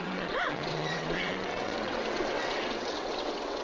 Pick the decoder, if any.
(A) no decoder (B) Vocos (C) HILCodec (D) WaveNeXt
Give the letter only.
D